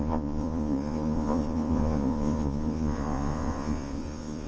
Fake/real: fake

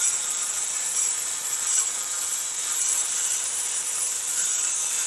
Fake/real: fake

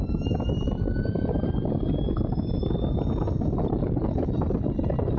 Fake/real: real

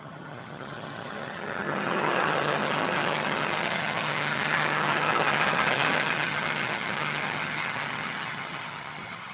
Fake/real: fake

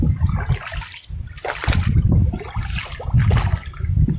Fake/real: real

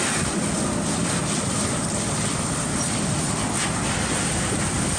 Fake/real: real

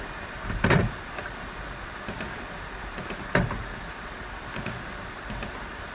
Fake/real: real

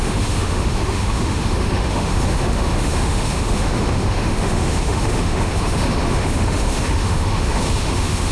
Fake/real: fake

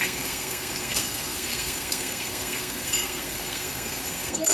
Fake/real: fake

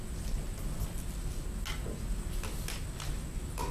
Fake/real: real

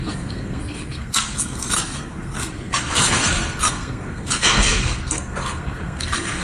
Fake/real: fake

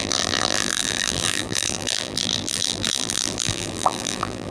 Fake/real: fake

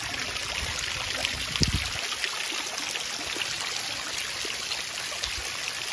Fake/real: real